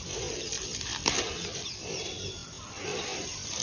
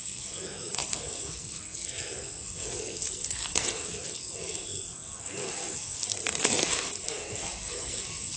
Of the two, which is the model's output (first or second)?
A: second